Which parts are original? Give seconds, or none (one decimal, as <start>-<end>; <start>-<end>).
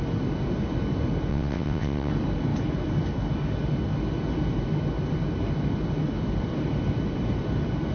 0.0-1.3; 2.1-7.9